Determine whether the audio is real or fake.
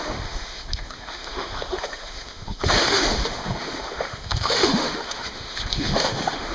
fake